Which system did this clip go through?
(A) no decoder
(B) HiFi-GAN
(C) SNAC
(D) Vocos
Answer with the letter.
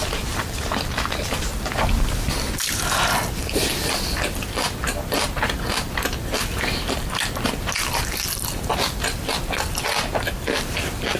A